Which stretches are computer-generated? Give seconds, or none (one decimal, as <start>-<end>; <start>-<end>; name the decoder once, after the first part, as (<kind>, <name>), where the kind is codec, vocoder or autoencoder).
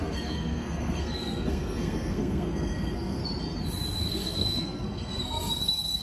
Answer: 0.0-3.2 (codec, SNAC); 4.0-6.0